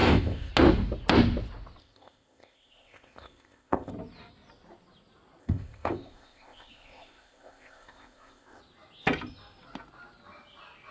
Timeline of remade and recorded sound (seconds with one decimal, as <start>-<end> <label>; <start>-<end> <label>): 0.0-0.5 remade; 0.5-1.8 recorded; 1.8-3.9 remade; 3.9-5.4 recorded; 5.4-8.6 remade; 8.6-10.9 recorded